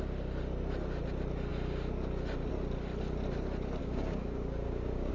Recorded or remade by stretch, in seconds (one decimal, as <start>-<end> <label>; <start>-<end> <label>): 0.0-3.8 recorded; 3.8-5.1 remade